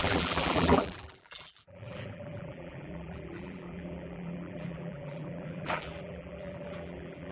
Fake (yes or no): yes